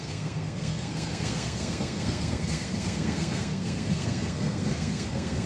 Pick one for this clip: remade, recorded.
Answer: remade